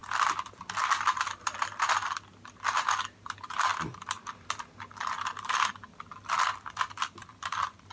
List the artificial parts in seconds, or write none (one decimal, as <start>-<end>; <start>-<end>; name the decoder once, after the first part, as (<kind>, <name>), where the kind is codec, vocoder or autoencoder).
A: 3.7-4.7 (vocoder, BigVGAN v2); 7.2-7.9